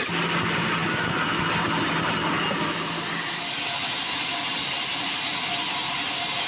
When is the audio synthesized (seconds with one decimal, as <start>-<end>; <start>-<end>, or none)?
none